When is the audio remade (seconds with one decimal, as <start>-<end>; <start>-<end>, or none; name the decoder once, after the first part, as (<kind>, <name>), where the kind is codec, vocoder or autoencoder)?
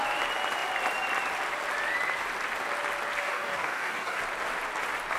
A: 3.2-4.2 (codec, DAC)